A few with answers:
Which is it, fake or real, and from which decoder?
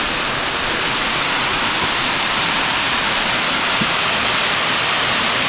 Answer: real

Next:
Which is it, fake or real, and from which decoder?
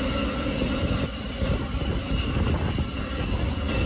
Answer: real